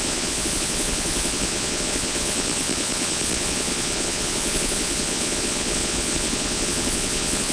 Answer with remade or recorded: remade